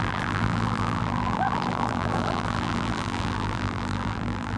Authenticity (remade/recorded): remade